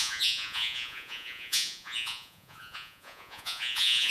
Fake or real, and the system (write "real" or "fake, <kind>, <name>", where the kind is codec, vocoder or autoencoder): fake, vocoder, Vocos